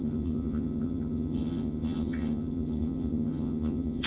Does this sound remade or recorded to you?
remade